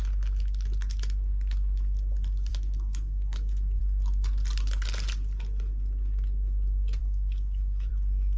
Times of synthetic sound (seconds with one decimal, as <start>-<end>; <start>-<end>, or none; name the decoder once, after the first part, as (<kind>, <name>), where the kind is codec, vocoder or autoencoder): 2.5-3.8 (autoencoder, DAC-VAE); 7.0-7.9